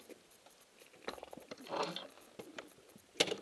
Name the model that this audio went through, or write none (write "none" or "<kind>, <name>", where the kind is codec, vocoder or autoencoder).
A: none